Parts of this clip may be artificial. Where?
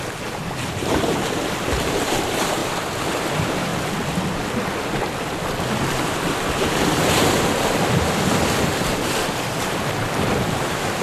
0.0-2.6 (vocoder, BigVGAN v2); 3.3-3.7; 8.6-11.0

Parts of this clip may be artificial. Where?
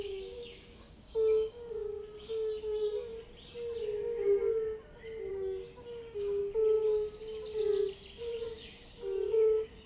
0.0-3.1 (codec, DAC); 5.3-6.4; 8.2-9.9